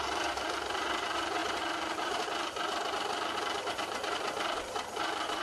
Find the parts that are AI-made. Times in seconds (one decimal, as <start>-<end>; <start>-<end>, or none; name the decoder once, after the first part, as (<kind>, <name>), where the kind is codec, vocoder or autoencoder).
0.0-5.4 (vocoder, BigVGAN v2)